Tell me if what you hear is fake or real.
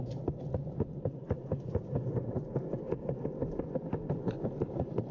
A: real